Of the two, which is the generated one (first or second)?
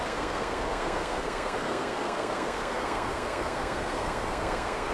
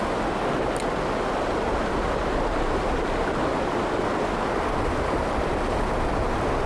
first